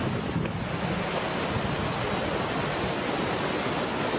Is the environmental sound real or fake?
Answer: real